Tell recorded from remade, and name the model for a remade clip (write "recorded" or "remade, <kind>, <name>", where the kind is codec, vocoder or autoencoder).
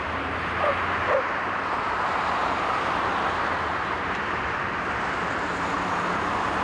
remade, vocoder, BigVGAN v2